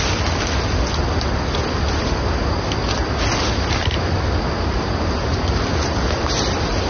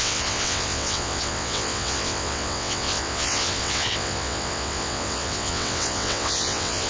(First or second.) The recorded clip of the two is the first